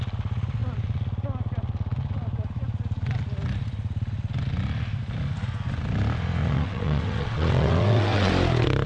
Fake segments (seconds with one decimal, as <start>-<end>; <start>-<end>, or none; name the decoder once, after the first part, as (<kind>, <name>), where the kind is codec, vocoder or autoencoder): 6.4-8.3 (vocoder, WaveNeXt)